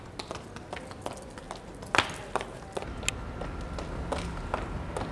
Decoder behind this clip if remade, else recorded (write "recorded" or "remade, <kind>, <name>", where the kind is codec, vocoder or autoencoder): recorded